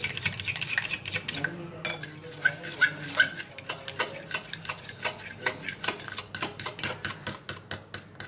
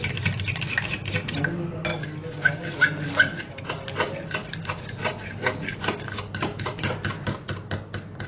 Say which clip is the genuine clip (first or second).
first